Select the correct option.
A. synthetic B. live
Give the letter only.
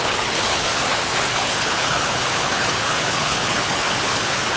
A